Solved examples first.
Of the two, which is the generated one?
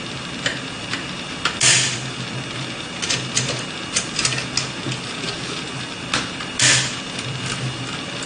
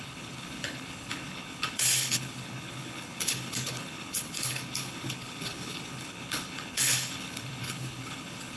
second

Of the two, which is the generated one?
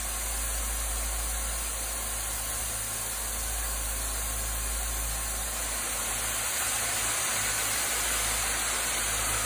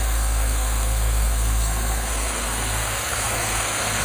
second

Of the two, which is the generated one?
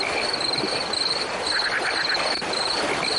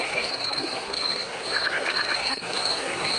second